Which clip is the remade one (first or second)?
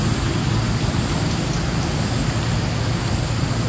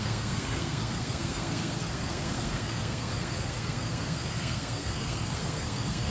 second